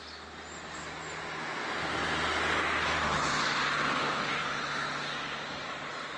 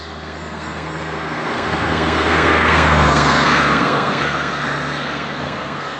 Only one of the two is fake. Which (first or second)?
second